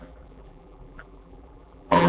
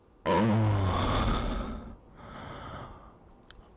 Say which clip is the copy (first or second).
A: first